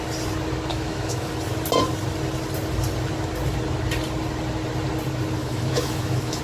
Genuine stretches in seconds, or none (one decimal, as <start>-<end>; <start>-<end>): 0.0-0.7; 1.3-5.4